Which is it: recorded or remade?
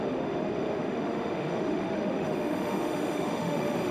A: remade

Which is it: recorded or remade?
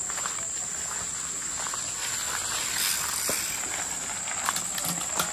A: recorded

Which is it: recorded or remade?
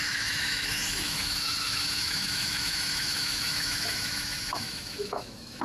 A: remade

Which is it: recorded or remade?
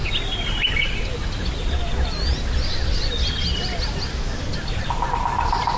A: recorded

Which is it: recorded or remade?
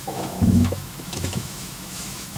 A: remade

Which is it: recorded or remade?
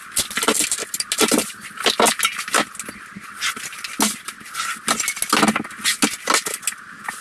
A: recorded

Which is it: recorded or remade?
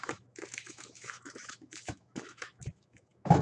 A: remade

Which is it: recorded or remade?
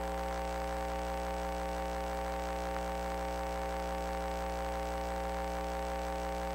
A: recorded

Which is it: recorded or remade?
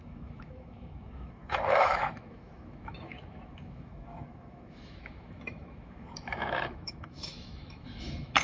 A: remade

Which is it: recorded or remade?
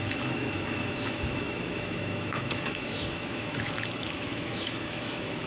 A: remade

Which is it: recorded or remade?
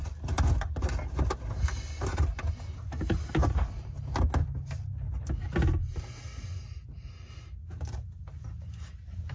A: recorded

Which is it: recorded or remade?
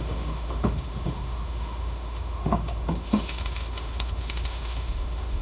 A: remade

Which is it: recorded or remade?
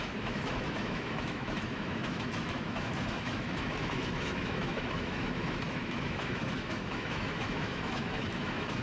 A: remade